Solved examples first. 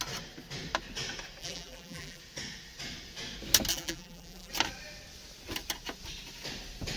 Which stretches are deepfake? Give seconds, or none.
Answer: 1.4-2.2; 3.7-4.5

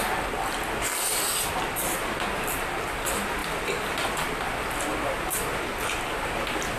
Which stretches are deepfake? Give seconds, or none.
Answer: 3.4-4.1

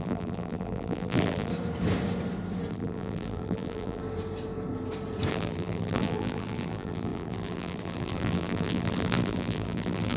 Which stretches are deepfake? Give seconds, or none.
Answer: 0.0-1.5; 2.7-4.0; 5.3-10.2

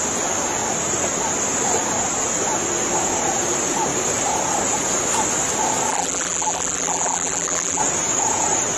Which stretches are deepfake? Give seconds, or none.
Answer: 5.9-7.8

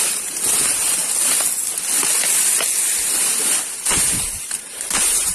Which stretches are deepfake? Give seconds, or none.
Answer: 0.0-1.0; 4.2-5.3

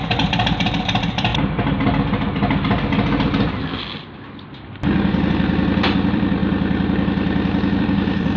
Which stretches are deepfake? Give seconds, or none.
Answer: 0.0-1.3; 5.3-6.4; 7.8-8.4

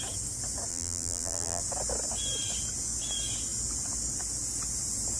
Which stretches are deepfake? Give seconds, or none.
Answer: 0.7-1.6